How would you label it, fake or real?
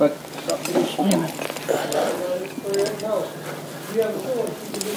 real